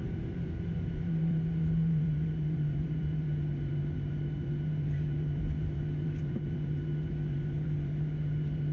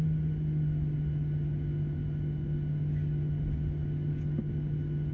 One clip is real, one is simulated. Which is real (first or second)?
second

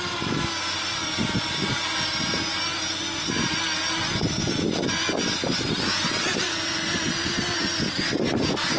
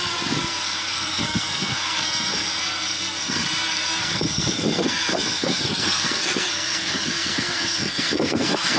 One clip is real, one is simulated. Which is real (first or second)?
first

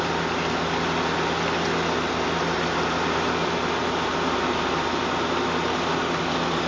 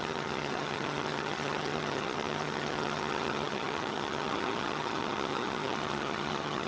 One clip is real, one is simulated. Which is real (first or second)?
first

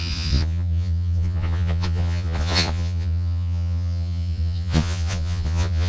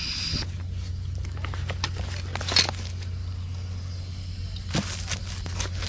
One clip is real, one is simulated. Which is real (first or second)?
second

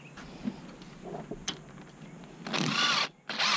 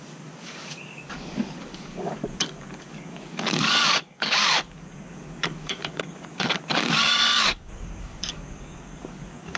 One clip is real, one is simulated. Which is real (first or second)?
first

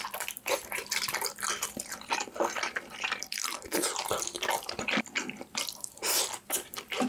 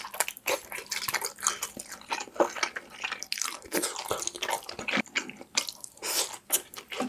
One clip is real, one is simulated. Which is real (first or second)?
second